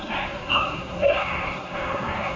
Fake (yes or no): yes